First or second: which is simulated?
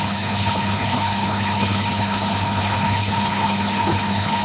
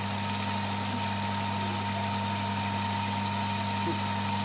first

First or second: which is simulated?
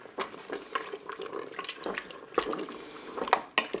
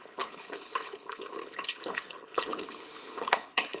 second